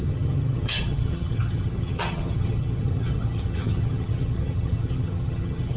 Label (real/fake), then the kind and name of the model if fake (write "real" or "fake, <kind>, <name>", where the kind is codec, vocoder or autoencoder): fake, vocoder, HiFi-GAN